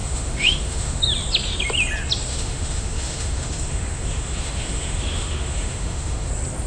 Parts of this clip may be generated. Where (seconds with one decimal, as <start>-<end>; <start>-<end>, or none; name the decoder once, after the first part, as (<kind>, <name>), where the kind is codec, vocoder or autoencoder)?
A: 0.0-1.0 (autoencoder, DAC-VAE); 2.3-6.3